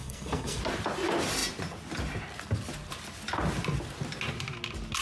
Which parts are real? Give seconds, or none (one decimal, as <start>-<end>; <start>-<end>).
0.6-5.0